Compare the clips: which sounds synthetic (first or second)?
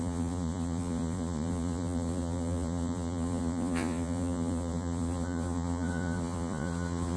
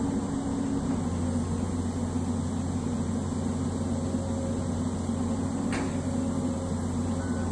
first